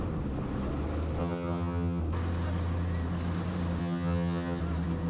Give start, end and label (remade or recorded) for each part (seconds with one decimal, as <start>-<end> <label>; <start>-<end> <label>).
0.0-1.2 recorded; 1.2-2.0 remade; 2.0-3.8 recorded; 3.8-4.6 remade; 4.6-5.1 recorded